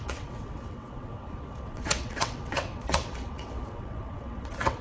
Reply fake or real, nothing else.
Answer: fake